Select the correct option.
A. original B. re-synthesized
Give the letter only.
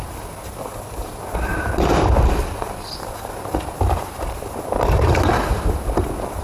A